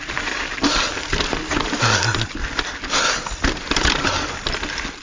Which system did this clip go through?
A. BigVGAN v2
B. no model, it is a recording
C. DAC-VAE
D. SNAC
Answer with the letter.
B